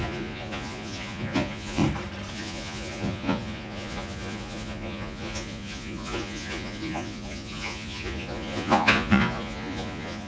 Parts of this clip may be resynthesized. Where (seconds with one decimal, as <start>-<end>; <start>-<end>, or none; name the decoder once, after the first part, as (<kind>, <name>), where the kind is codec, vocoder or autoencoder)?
0.0-1.8 (vocoder, Vocos); 2.3-10.3